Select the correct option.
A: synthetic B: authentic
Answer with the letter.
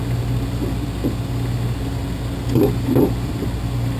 B